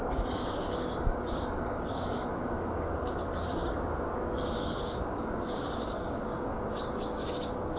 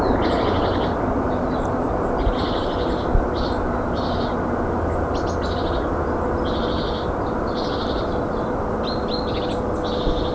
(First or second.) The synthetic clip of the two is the first